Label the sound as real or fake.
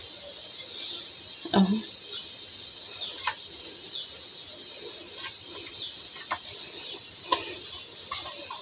real